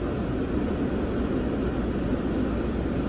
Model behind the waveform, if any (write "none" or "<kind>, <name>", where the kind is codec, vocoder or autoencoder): none